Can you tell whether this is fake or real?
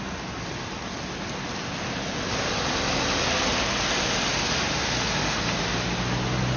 real